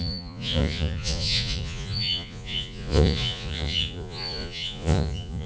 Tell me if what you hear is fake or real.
fake